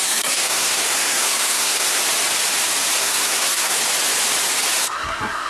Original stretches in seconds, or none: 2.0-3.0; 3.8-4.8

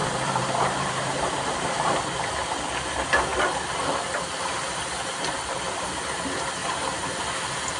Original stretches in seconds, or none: 1.7-7.8

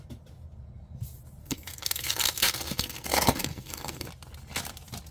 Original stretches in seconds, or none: 0.0-1.4; 4.1-5.1

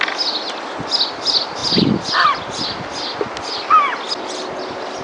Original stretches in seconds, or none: 0.0-5.0

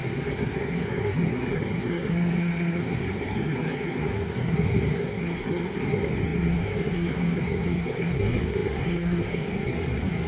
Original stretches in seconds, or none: none